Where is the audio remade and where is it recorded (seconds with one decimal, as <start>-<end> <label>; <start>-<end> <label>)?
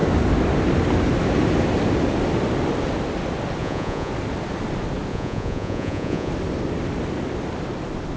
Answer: 0.0-3.6 recorded; 3.6-4.1 remade; 4.1-5.1 recorded; 5.1-6.3 remade; 6.3-8.2 recorded